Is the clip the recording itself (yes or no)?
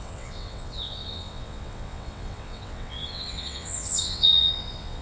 no